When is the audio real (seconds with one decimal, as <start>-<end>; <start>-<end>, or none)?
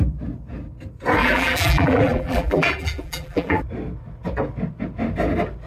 0.0-1.2; 3.6-5.7